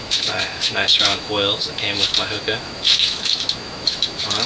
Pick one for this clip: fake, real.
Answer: fake